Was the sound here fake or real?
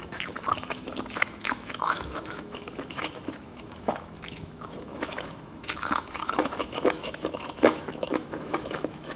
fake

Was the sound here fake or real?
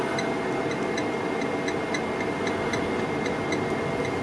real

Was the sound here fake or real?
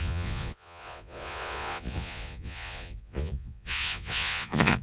fake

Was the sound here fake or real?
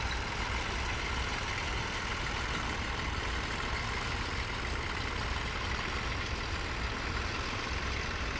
real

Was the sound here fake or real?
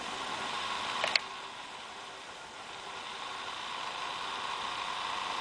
real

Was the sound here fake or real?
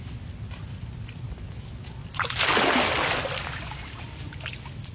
real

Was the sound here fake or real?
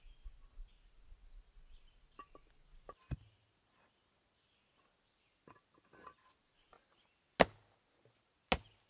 real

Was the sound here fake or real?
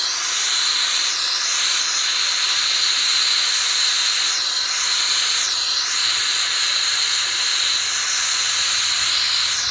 real